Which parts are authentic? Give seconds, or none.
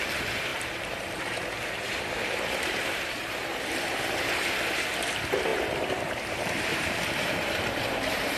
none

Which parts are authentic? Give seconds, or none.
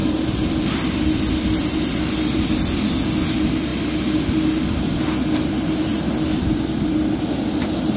0.0-8.0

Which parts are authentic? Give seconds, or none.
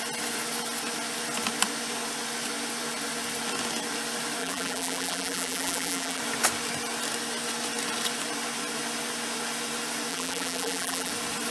0.0-4.4; 6.2-10.1; 11.1-11.5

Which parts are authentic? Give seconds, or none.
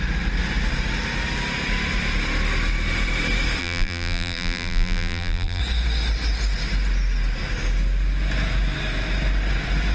0.0-3.6; 5.6-9.9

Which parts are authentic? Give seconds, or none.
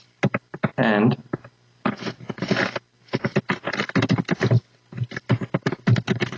0.0-6.4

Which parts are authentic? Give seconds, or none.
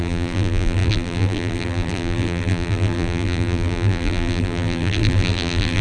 none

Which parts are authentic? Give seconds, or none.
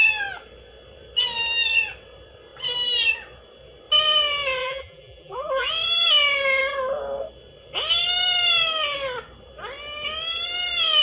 0.0-4.6; 5.7-11.0